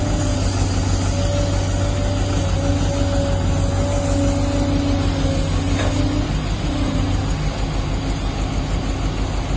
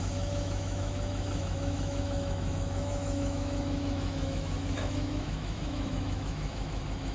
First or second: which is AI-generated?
second